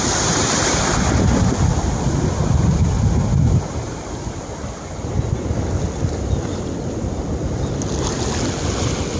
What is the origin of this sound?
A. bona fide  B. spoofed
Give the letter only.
A